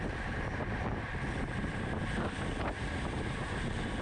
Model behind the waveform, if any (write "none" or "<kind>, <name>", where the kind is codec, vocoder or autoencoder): none